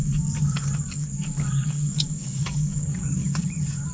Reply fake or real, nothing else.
fake